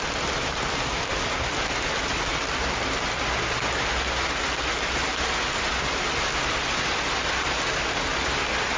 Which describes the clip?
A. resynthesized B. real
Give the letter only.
B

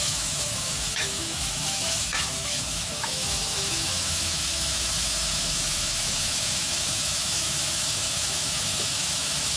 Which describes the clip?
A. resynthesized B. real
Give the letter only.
A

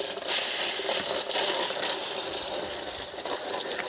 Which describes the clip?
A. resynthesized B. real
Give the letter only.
B